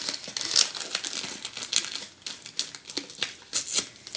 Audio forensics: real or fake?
real